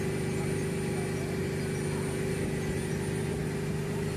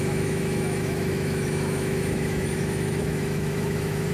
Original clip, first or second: first